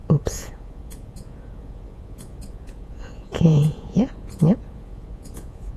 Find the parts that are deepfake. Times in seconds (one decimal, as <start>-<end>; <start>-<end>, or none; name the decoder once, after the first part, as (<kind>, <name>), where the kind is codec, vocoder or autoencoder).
0.0-5.8 (vocoder, Vocos)